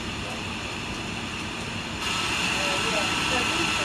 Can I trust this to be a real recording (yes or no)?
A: yes